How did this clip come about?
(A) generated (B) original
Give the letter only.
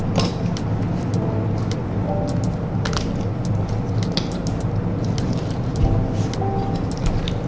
B